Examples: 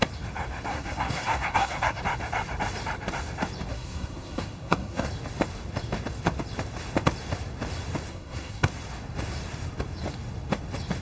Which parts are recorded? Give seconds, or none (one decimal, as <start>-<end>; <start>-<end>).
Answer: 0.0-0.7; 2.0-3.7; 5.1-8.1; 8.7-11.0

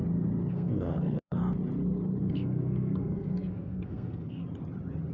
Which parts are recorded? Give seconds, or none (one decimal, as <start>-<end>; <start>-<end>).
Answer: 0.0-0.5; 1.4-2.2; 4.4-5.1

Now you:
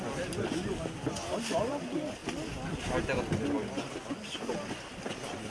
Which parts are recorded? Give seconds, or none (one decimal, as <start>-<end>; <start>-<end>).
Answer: 0.0-5.5

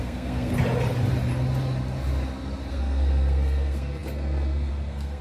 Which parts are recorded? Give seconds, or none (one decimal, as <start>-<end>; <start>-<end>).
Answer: 0.5-2.7

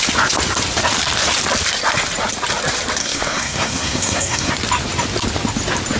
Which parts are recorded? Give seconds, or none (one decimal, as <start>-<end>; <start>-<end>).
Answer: 0.0-3.0; 4.5-6.0